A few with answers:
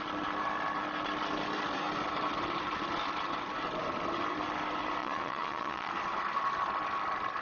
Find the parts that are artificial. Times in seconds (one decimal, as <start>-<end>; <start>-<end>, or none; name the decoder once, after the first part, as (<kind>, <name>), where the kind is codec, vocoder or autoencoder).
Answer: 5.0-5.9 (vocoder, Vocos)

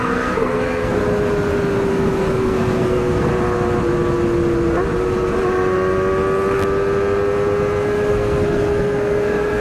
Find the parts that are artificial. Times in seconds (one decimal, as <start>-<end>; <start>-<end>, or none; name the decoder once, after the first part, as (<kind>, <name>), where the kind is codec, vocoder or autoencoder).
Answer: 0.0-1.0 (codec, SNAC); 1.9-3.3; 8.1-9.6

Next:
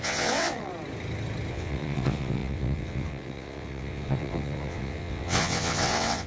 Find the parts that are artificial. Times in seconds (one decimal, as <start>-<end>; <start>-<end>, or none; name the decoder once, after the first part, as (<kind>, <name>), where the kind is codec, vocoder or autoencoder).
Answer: 0.0-0.7 (vocoder, WaveNeXt); 1.5-6.3